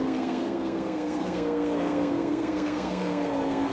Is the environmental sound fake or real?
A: fake